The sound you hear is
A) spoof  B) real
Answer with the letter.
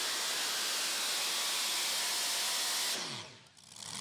B